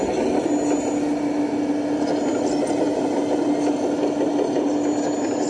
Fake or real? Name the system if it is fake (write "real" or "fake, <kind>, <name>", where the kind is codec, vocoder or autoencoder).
real